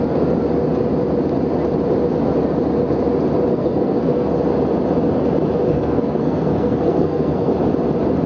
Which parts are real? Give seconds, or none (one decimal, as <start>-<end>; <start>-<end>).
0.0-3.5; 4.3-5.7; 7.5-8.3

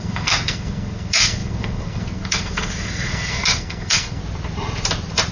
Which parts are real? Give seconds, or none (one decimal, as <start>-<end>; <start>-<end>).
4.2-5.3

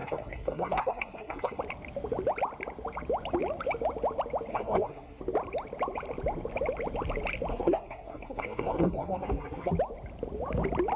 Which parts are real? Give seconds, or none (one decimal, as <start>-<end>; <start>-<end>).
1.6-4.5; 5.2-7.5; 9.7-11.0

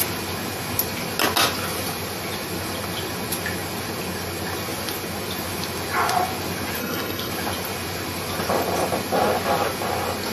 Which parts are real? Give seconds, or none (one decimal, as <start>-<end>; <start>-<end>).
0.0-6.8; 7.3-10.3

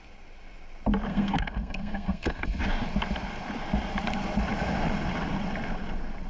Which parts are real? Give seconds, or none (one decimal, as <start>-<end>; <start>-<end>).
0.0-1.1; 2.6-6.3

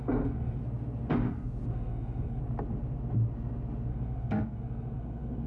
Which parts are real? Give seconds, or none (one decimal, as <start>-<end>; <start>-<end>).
0.6-1.7; 2.4-3.9